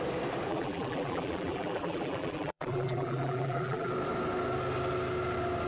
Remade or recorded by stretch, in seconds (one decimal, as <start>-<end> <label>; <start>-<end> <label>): 0.0-0.5 recorded; 0.5-3.9 remade; 3.9-5.7 recorded